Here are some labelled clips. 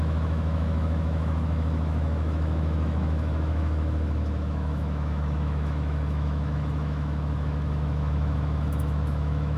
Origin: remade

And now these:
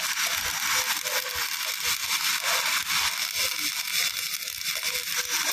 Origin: recorded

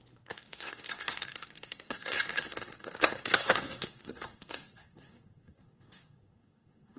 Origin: remade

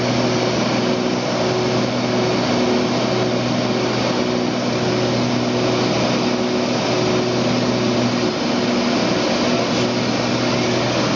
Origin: recorded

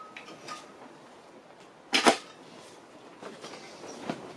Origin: recorded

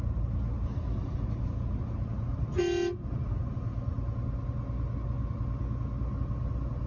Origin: recorded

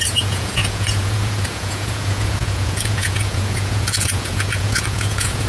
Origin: remade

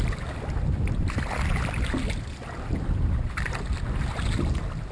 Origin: recorded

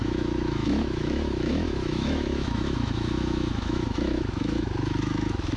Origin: remade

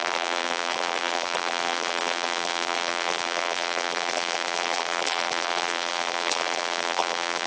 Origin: remade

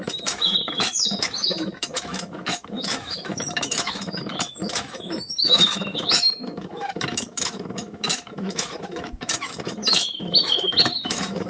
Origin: remade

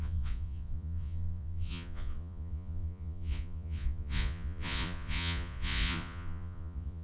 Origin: remade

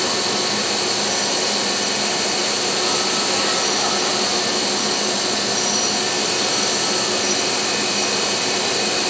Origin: recorded